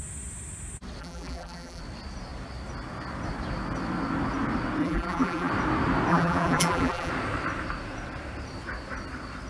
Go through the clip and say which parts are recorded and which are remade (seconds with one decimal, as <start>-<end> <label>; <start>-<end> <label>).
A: 0.0-1.0 recorded; 1.0-1.8 remade; 1.8-4.8 recorded; 4.8-5.5 remade; 5.5-6.1 recorded; 6.1-7.1 remade; 7.1-9.5 recorded